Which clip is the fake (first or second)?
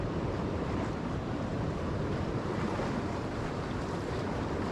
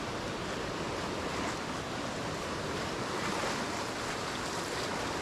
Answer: first